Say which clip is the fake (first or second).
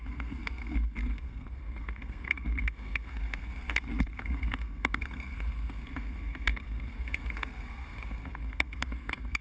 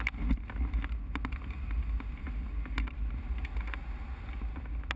first